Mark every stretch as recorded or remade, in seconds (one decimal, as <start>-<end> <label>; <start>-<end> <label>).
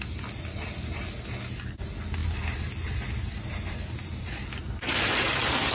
0.0-5.7 recorded